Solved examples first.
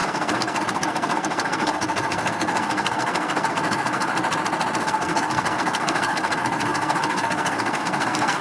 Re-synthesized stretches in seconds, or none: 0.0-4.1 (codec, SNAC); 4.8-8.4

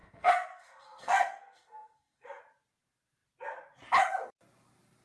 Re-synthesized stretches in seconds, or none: 0.0-2.4 (codec, SNAC)

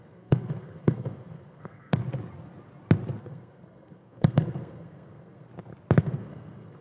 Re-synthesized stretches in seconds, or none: 0.0-2.0 (codec, SNAC); 3.2-5.5; 6.0-6.8

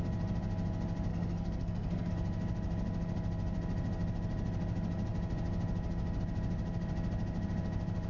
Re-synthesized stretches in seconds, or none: 1.1-2.1 (codec, SNAC)

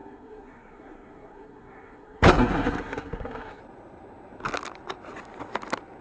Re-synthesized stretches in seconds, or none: 0.0-3.6 (codec, SNAC)

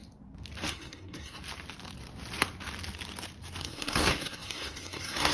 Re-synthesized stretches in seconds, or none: 0.7-1.4 (codec, SNAC); 3.6-5.3

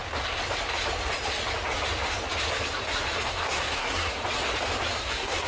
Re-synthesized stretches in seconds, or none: 3.3-4.2 (codec, SNAC); 5.0-5.5